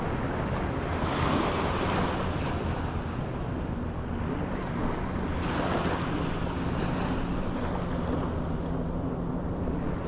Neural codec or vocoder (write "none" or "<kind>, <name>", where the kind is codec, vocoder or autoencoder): none